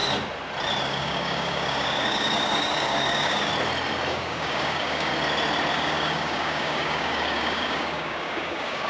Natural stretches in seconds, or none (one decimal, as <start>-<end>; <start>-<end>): 0.0-0.8; 3.5-4.1; 5.1-5.7